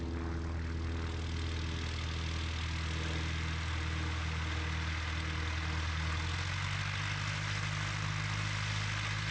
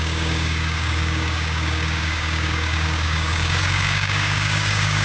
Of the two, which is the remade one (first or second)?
second